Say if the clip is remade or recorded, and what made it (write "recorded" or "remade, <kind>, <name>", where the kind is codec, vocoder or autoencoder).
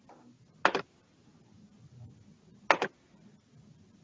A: recorded